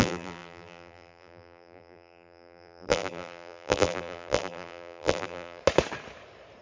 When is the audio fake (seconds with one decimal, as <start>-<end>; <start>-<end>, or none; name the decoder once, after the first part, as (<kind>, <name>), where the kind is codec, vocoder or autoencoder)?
0.0-5.6 (vocoder, BigVGAN v2)